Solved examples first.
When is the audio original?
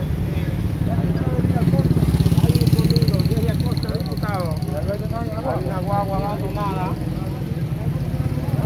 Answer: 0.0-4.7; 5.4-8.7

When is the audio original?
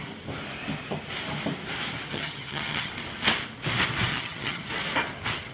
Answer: 0.0-2.1; 2.9-4.1; 4.7-5.5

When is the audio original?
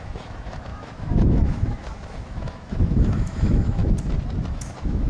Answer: 3.8-4.5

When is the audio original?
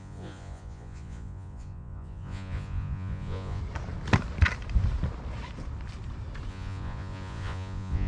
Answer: 3.6-6.5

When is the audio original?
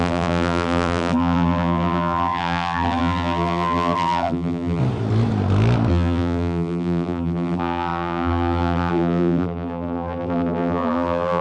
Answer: 4.8-5.9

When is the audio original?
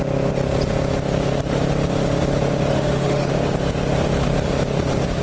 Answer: 0.0-2.7; 3.3-5.2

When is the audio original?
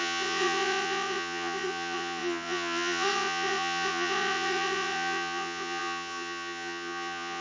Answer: none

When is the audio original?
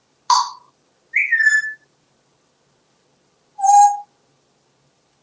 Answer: 0.0-5.2